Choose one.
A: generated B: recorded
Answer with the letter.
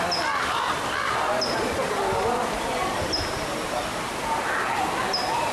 B